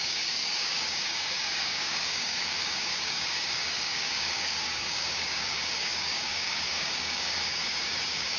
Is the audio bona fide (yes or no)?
no